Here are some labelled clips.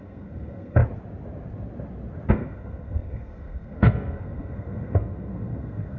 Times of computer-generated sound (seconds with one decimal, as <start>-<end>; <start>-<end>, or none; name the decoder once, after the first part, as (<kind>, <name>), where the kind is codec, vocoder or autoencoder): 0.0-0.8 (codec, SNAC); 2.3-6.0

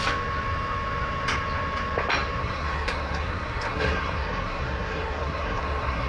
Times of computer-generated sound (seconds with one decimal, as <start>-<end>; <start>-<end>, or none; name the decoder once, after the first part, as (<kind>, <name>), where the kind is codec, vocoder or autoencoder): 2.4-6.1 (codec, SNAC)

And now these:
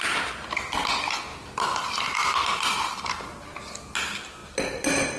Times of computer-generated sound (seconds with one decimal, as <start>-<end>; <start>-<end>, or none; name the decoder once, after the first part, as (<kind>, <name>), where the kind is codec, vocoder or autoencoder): none